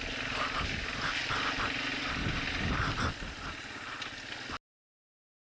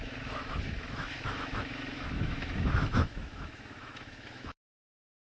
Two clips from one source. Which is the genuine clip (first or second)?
first